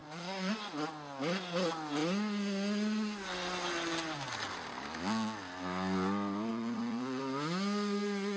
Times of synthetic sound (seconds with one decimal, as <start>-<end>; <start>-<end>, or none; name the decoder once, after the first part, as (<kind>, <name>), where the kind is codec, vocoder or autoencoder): 0.0-0.5 (vocoder, Vocos); 6.5-7.2